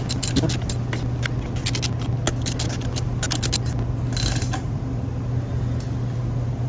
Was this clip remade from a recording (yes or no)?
no